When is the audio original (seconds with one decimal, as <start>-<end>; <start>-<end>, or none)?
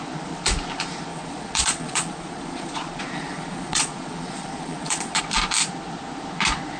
0.0-1.1; 5.2-6.8